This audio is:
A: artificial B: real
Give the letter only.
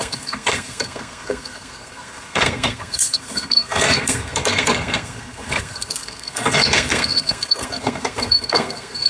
A